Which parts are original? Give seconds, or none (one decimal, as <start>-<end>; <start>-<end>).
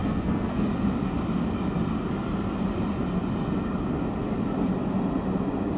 0.7-5.8